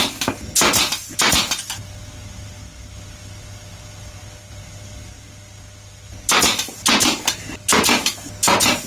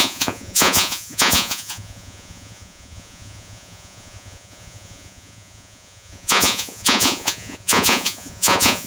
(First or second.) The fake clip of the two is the second